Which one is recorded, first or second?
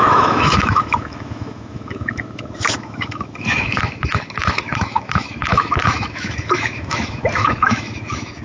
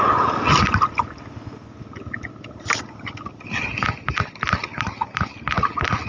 second